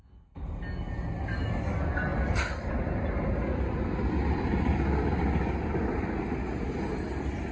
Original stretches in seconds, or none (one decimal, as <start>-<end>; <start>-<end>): 0.0-2.1; 2.7-7.5